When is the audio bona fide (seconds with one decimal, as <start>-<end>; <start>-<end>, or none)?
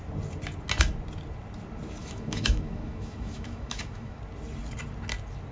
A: 0.0-2.0; 4.2-5.5